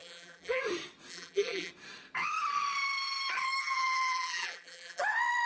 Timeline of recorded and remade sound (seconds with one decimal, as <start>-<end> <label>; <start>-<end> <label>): 0.0-0.6 remade; 0.6-1.1 recorded; 1.1-1.7 remade; 1.7-3.6 recorded; 3.6-5.0 remade; 5.0-5.5 recorded